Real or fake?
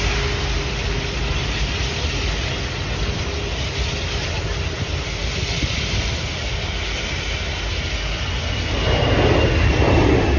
real